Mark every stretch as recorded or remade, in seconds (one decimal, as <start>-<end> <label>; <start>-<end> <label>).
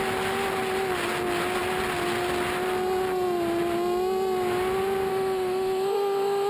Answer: 0.0-5.1 recorded; 5.1-6.5 remade